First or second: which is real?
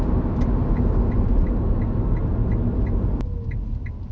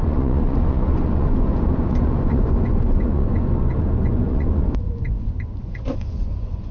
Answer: first